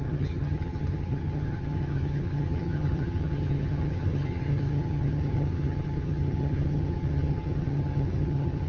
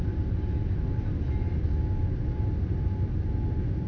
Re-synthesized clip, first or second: first